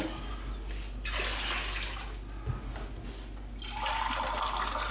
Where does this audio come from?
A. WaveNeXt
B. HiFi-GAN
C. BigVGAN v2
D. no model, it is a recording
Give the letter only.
D